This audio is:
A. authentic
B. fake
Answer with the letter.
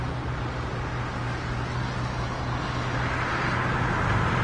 A